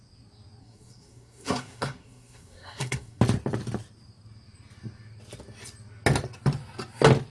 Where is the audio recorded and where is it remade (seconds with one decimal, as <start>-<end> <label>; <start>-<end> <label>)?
0.0-0.6 recorded; 0.6-3.2 remade; 3.2-7.3 recorded